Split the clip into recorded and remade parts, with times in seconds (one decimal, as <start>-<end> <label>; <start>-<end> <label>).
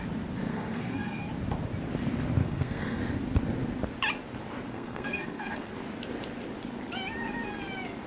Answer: 0.0-0.5 recorded; 0.5-1.2 remade; 1.2-2.4 recorded; 2.4-3.0 remade; 3.0-4.7 recorded; 4.7-5.7 remade; 5.7-8.1 recorded